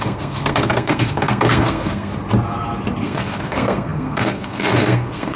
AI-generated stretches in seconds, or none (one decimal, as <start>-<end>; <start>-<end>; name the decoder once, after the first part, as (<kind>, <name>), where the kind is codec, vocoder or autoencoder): 0.0-2.1 (codec, SNAC); 3.0-5.4